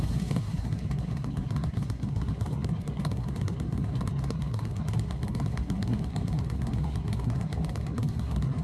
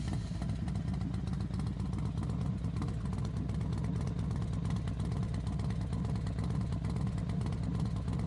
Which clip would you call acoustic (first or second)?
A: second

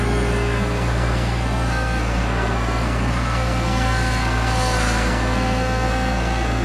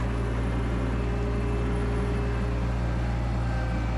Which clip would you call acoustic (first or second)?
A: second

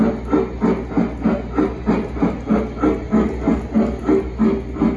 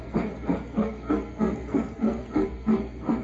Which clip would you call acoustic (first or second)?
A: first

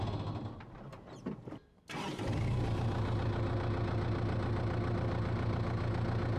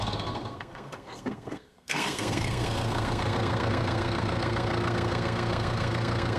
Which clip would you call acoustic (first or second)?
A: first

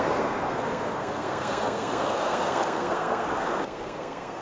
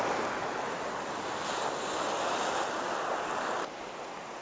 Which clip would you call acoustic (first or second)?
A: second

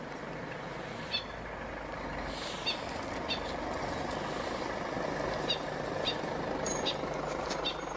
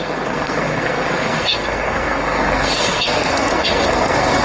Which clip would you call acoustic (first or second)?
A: first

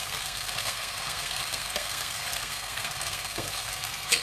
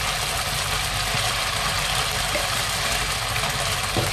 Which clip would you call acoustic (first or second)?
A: second